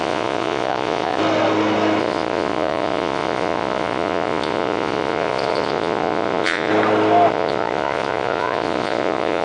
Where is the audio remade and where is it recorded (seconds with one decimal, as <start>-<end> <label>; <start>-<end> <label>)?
0.0-1.2 remade; 1.2-2.0 recorded; 2.0-6.7 remade; 6.7-7.3 recorded; 7.3-9.4 remade